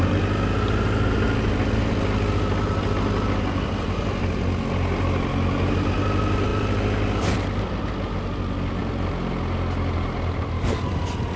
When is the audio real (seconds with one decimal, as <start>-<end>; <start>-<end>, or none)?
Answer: 0.0-11.4